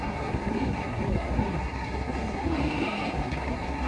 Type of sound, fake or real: fake